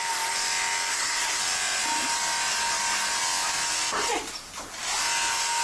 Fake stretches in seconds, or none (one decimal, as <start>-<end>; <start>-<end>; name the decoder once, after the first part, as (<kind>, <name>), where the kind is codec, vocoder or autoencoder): 0.9-1.4 (codec, SNAC)